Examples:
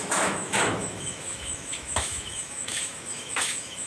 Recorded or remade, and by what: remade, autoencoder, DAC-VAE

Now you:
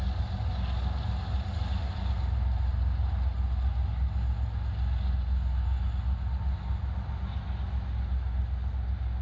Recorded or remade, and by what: recorded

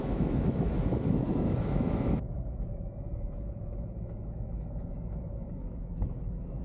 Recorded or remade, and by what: remade, autoencoder, DAC-VAE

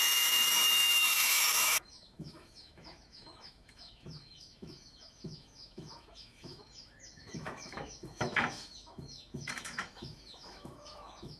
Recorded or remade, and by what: remade, autoencoder, DAC-VAE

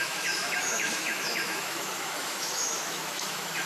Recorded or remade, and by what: remade, autoencoder, DAC-VAE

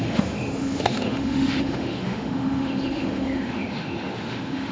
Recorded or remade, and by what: remade, autoencoder, DAC-VAE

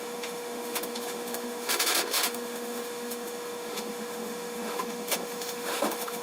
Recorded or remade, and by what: remade, autoencoder, DAC-VAE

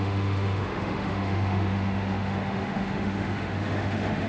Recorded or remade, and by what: remade, autoencoder, DAC-VAE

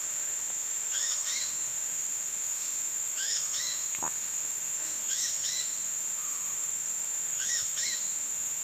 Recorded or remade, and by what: remade, autoencoder, DAC-VAE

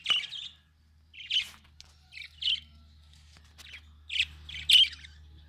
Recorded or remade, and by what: recorded